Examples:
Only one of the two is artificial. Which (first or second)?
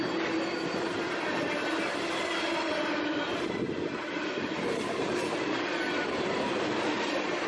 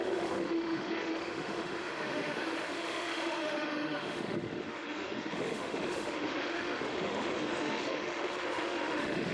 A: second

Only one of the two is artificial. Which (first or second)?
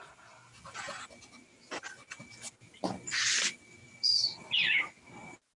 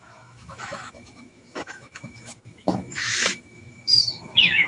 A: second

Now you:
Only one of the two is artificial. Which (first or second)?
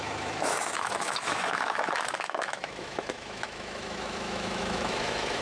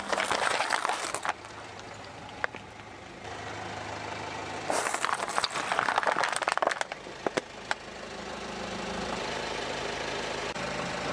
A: first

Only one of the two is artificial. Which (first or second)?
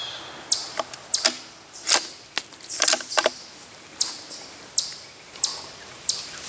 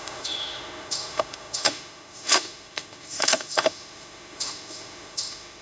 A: second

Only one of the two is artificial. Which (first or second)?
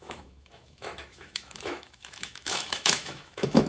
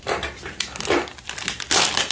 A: first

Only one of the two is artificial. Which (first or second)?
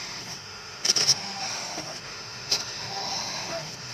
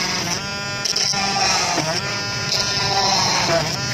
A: first